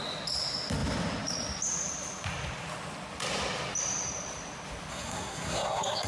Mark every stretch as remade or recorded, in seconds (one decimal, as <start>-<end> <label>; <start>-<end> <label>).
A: 0.0-4.9 recorded; 4.9-6.1 remade